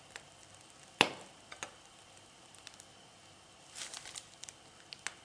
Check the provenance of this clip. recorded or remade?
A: recorded